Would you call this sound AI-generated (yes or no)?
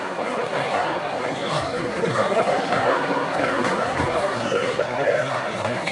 yes